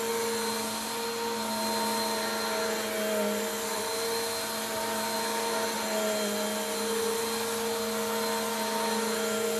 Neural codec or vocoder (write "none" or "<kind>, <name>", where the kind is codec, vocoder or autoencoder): none